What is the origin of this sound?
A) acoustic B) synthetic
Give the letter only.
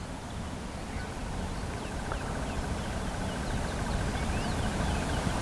A